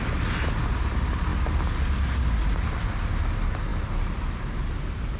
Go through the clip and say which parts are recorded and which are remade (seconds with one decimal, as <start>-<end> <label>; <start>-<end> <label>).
0.0-5.2 recorded